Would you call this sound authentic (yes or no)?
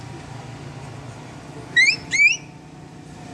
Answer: yes